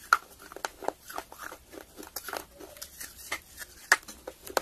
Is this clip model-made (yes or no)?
no